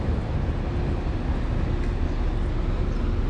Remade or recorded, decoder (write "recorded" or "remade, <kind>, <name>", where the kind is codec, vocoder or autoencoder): recorded